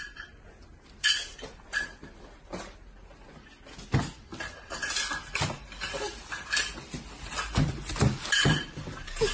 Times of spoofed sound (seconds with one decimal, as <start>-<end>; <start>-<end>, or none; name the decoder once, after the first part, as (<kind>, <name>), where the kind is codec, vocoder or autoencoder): none